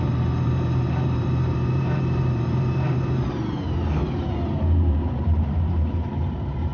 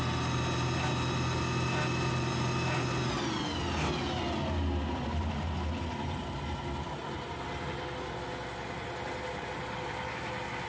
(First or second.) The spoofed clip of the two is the first